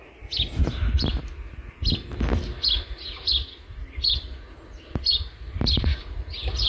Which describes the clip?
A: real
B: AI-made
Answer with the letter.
A